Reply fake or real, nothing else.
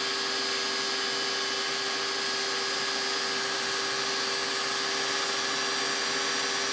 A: real